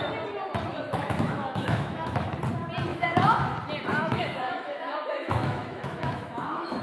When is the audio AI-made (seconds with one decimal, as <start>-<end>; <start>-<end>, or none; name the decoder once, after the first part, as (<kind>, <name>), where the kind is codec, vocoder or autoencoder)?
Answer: 0.7-2.3 (autoencoder, DAC-VAE); 2.9-3.4; 3.9-6.8